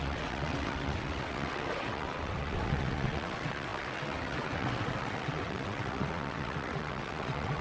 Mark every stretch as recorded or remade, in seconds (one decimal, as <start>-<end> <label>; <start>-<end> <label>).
0.0-7.6 remade